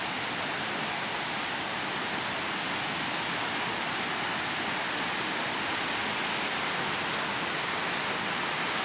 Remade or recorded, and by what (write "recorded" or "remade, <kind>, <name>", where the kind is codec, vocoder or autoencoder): recorded